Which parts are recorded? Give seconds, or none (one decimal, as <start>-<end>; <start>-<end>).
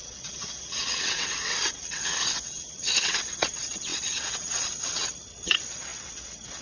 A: none